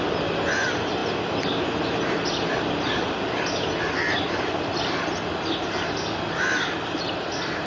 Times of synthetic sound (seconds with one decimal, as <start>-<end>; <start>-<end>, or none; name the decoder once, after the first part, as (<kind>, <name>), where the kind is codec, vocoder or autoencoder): none